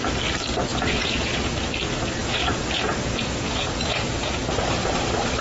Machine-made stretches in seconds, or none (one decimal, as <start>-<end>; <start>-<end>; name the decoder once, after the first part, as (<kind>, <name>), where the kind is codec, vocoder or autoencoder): 0.7-1.5 (vocoder, Vocos); 2.2-4.4